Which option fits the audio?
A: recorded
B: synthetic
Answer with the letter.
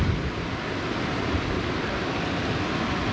A